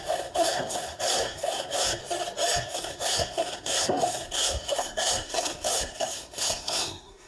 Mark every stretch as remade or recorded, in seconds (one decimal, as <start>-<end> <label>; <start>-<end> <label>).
0.0-2.0 remade; 2.0-2.6 recorded; 2.6-7.3 remade